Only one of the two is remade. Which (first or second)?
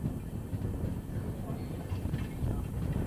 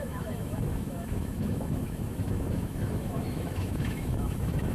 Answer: second